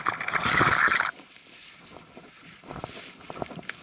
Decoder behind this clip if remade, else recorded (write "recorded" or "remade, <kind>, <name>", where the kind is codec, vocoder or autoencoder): recorded